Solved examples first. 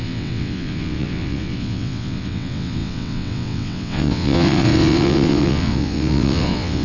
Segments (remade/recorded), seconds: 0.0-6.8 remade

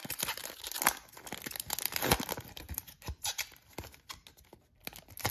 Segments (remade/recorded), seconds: 0.0-5.3 recorded